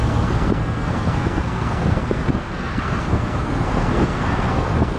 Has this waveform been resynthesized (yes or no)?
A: yes